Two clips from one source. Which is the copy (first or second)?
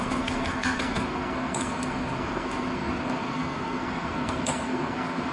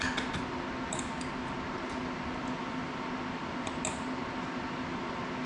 first